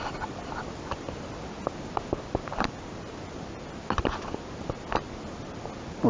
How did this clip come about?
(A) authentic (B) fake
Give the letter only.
A